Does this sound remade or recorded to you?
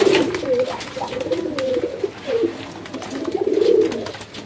recorded